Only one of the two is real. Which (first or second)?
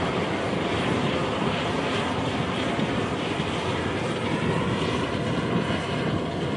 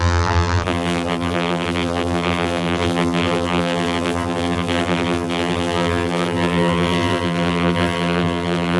first